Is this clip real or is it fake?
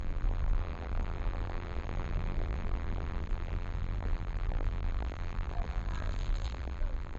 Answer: fake